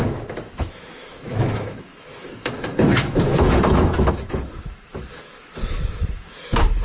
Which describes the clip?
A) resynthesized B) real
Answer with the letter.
A